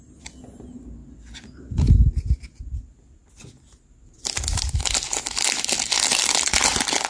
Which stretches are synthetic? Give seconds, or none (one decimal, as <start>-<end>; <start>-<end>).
none